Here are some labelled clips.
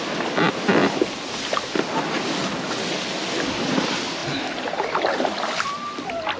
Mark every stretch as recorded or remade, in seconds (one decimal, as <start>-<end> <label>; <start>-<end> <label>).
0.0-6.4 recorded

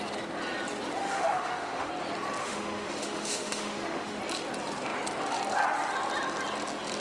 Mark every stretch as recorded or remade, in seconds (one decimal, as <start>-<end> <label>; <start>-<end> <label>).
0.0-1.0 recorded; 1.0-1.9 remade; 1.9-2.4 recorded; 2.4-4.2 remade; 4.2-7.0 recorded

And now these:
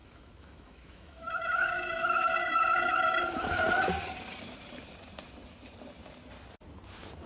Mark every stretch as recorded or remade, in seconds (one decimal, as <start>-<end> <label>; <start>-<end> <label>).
0.0-3.6 remade; 3.6-7.3 recorded

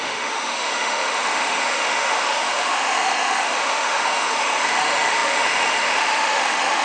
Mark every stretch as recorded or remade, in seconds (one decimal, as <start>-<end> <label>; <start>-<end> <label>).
0.0-6.8 remade

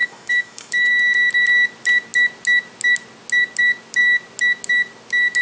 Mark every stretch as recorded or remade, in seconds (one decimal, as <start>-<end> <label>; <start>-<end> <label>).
0.0-0.9 remade; 0.9-5.4 recorded

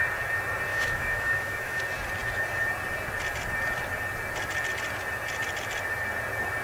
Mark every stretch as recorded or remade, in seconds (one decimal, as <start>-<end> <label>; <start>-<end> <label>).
0.0-0.7 recorded; 0.7-1.8 remade; 1.8-6.6 recorded